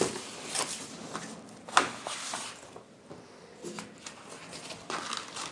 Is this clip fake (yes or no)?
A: no